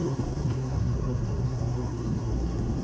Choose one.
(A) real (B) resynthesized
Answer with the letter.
B